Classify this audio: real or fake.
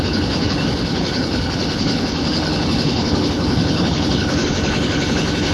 fake